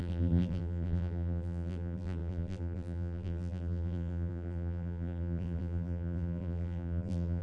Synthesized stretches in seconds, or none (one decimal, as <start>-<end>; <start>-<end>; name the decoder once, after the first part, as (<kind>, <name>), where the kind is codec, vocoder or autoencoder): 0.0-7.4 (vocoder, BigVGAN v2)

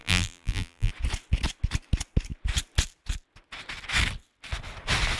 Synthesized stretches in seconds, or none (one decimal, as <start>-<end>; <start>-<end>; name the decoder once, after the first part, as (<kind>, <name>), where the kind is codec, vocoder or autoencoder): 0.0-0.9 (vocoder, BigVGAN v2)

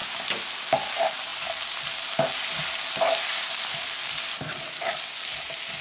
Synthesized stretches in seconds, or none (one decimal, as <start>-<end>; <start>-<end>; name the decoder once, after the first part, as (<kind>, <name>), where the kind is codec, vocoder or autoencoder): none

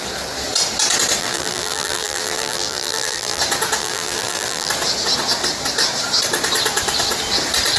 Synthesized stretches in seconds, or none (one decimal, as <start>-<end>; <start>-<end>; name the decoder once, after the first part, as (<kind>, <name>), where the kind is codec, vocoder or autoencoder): 1.2-3.4 (vocoder, BigVGAN v2); 3.8-4.7

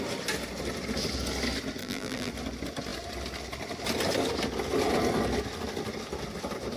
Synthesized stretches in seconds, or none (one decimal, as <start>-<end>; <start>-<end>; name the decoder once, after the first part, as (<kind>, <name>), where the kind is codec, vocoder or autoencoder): 1.8-2.3 (vocoder, BigVGAN v2)

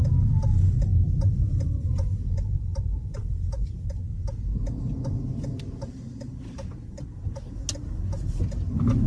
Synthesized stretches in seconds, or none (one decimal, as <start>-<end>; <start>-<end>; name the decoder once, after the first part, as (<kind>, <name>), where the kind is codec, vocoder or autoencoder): 0.9-3.9 (vocoder, BigVGAN v2)

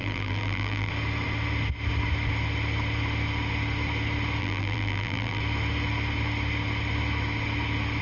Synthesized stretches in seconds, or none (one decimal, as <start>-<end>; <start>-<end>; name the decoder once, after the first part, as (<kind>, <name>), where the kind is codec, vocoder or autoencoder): 0.0-0.9 (vocoder, BigVGAN v2); 4.4-5.4